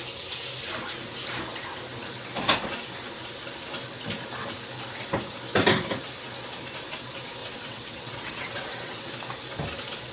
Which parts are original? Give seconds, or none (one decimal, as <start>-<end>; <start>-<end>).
0.0-7.4; 9.1-10.1